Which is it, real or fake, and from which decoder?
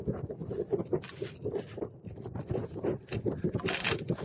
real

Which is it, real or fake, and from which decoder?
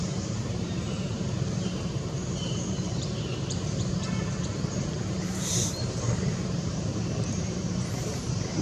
fake, vocoder, BigVGAN v2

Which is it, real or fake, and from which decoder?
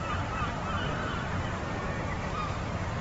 fake, vocoder, BigVGAN v2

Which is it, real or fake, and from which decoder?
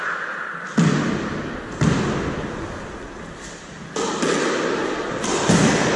real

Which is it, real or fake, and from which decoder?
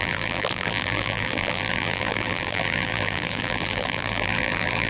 fake, vocoder, BigVGAN v2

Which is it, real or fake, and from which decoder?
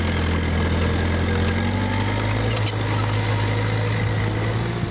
real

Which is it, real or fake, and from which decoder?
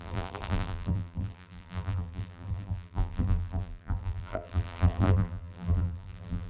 fake, vocoder, BigVGAN v2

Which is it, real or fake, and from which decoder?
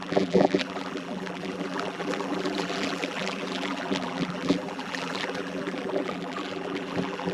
fake, vocoder, BigVGAN v2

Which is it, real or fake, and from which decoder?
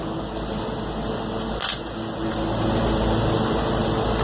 real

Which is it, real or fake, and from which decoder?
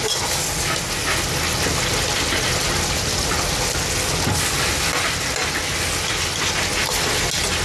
real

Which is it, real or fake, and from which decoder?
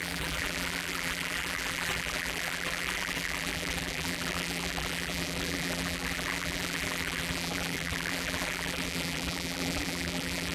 fake, vocoder, BigVGAN v2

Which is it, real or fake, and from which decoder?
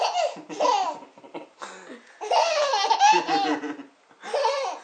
real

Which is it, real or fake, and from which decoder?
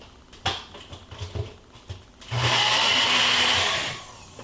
real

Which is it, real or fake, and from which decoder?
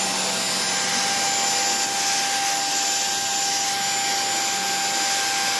real